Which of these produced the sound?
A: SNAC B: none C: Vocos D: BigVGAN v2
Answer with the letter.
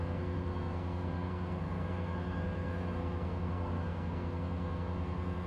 A